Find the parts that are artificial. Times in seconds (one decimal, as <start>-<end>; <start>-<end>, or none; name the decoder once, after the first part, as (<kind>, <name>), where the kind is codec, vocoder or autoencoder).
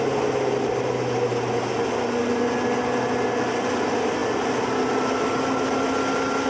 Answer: none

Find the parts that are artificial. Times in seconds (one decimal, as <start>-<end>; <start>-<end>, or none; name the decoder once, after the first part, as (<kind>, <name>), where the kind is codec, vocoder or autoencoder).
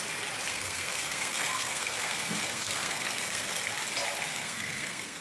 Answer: 0.5-3.6 (codec, SNAC); 4.3-5.2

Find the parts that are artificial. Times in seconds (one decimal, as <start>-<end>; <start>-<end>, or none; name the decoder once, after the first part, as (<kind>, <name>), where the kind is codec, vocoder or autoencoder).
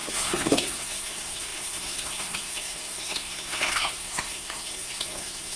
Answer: 0.0-5.6 (codec, SNAC)